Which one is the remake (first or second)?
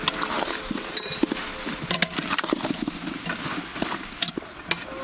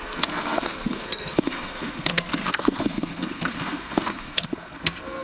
second